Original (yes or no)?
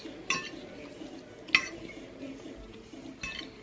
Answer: yes